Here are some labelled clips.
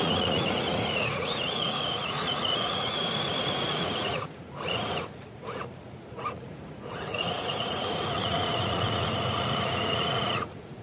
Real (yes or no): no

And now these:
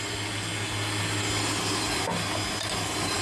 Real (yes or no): yes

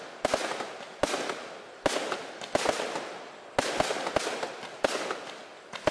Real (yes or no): yes